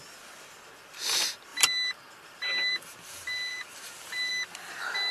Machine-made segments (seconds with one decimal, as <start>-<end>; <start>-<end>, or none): 1.5-4.3